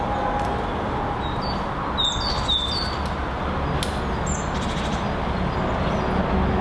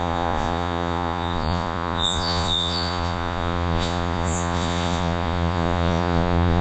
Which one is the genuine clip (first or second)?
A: first